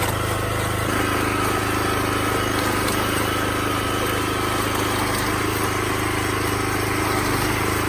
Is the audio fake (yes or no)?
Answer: no